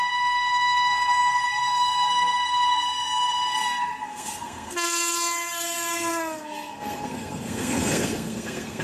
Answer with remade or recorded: remade